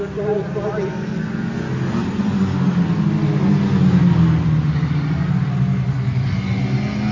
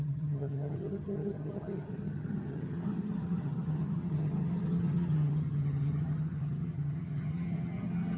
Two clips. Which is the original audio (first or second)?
first